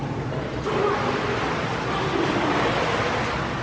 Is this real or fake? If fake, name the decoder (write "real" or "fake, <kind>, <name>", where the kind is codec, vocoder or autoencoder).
real